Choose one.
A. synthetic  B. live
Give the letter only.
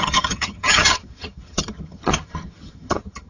A